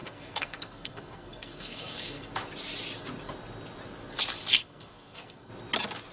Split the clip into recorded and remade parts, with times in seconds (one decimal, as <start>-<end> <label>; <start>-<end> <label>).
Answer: 0.0-2.3 remade; 2.3-4.6 recorded; 4.6-5.5 remade; 5.5-6.1 recorded